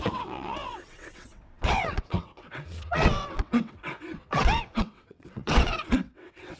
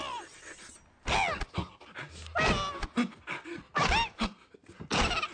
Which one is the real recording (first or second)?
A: second